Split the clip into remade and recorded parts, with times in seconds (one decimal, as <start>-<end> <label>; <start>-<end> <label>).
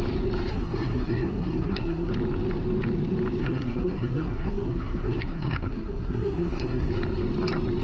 0.0-0.5 recorded; 0.5-2.1 remade; 2.1-3.4 recorded; 3.4-6.9 remade; 6.9-7.8 recorded